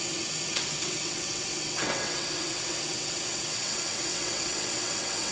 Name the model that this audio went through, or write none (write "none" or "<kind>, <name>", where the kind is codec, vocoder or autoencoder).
vocoder, WaveNeXt